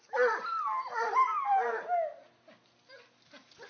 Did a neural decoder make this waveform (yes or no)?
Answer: no